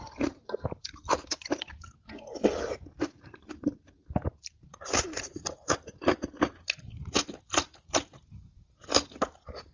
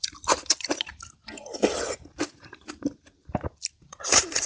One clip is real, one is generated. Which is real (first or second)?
first